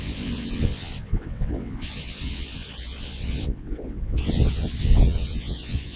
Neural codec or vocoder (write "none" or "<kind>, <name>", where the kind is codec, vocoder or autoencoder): vocoder, WaveNeXt